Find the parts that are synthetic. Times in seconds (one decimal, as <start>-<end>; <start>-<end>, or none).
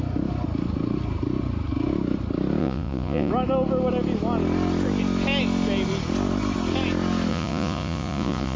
2.6-3.3; 7.3-8.6